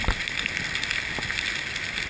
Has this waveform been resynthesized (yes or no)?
no